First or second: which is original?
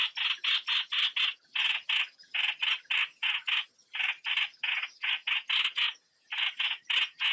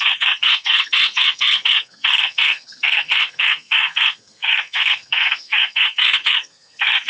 first